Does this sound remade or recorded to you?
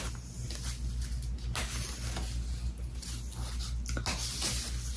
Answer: recorded